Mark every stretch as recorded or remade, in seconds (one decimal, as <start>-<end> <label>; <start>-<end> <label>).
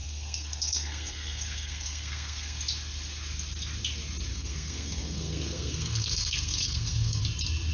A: 0.0-2.6 remade; 2.6-4.3 recorded; 4.3-7.2 remade; 7.2-7.7 recorded